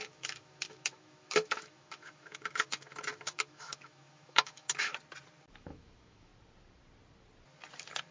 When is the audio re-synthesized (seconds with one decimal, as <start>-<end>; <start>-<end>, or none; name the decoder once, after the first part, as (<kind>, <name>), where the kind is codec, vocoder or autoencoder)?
0.0-4.9 (autoencoder, DAC-VAE); 5.5-6.3